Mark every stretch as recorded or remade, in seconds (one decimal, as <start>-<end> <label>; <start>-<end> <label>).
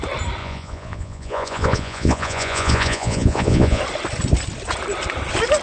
0.0-0.4 recorded; 0.4-3.8 remade; 3.8-5.6 recorded